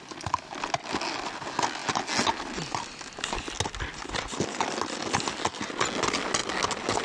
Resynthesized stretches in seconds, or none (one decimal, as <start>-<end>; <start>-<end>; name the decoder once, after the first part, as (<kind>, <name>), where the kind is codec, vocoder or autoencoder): none